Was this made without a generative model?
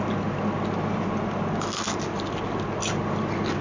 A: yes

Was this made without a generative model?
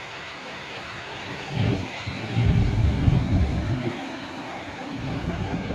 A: no